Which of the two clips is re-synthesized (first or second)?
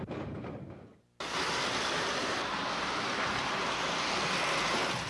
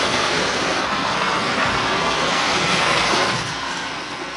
second